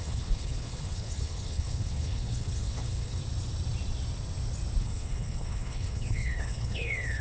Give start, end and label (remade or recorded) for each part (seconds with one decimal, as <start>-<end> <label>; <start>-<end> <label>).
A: 0.0-3.2 remade; 3.2-4.8 recorded; 4.8-7.2 remade